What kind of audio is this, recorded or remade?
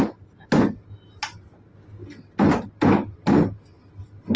recorded